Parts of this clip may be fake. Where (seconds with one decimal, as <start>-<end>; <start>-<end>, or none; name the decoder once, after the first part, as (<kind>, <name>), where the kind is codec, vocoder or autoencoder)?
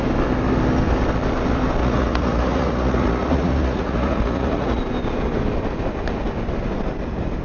1.8-4.8 (vocoder, Vocos)